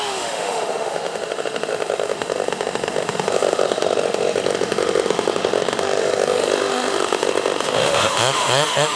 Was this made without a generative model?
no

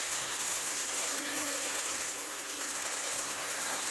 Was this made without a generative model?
no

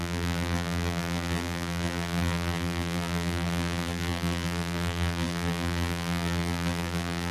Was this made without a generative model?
no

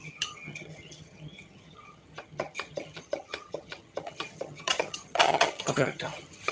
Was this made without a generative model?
no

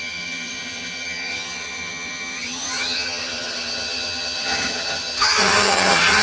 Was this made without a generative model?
no